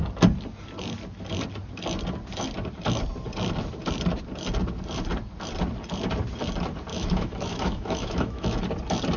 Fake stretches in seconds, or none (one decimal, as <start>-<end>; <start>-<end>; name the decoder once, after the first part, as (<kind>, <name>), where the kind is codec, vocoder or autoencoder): 6.9-8.6 (autoencoder, DAC-VAE)